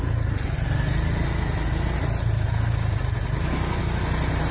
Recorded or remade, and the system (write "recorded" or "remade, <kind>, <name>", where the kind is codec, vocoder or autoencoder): recorded